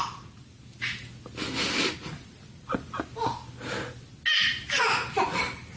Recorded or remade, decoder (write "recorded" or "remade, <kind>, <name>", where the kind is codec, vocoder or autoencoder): recorded